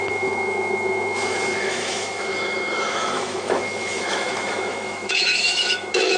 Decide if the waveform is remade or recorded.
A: remade